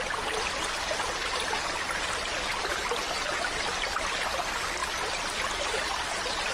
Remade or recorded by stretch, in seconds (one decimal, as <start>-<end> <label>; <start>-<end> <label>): 0.0-6.5 recorded